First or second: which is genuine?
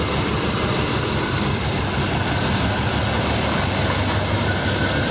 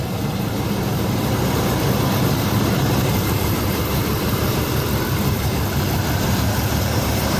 first